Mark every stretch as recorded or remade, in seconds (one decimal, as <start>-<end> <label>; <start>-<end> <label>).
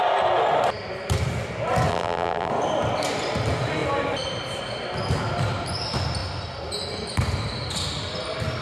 0.0-1.9 recorded; 1.9-2.5 remade; 2.5-8.6 recorded